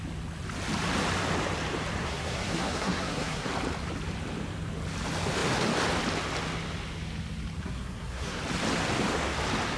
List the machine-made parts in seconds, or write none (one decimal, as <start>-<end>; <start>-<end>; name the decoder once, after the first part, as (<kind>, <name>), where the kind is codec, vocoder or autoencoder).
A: 2.0-3.5 (codec, SNAC); 7.6-8.4